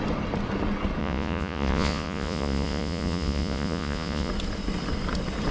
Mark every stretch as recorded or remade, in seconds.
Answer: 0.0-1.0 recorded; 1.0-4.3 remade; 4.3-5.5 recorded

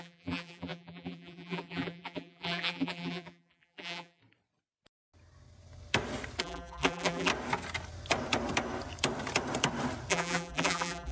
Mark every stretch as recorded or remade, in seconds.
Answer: 0.0-4.2 remade; 4.2-6.4 recorded; 6.4-7.3 remade; 7.3-10.1 recorded; 10.1-11.1 remade

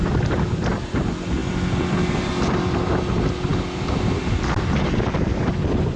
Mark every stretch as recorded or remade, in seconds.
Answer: 0.0-6.0 recorded

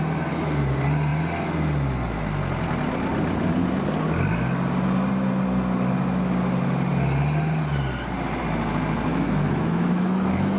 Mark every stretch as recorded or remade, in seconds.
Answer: 0.0-9.1 recorded; 9.1-10.6 remade

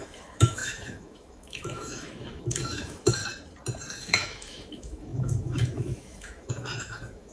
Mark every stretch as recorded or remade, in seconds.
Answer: 0.0-3.2 remade; 3.2-4.0 recorded; 4.0-7.3 remade

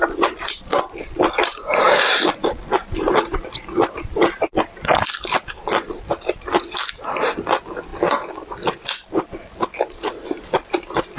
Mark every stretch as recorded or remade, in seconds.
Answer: 0.0-11.2 recorded

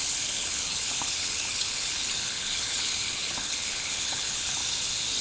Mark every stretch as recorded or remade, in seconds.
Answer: 0.0-4.6 remade; 4.6-5.2 recorded